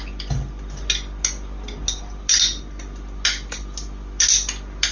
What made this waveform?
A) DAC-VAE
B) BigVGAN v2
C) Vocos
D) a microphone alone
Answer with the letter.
D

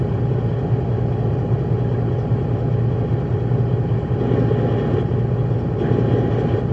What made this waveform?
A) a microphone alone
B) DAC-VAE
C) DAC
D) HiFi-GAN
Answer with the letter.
A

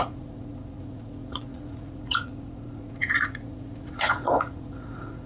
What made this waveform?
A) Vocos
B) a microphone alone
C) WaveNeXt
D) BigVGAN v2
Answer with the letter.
A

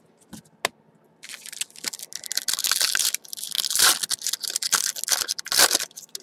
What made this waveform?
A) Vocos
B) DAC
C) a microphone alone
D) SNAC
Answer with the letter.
C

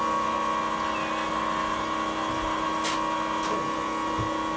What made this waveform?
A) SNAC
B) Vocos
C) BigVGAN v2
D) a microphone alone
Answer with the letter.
D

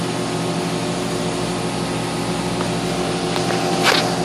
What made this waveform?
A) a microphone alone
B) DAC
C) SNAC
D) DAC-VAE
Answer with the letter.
A